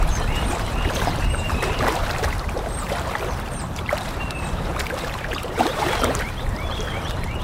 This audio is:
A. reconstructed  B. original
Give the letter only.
A